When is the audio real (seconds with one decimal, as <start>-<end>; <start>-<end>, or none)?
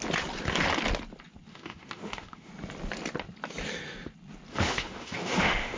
0.0-1.5; 2.5-4.5